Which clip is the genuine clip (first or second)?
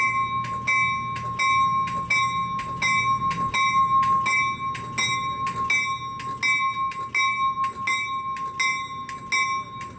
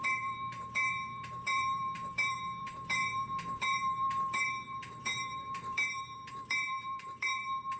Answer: first